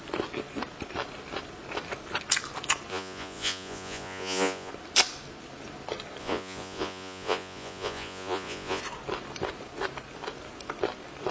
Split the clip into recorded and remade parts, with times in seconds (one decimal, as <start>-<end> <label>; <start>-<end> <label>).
0.0-2.9 recorded; 2.9-4.7 remade; 4.7-6.2 recorded; 6.2-8.8 remade; 8.8-11.3 recorded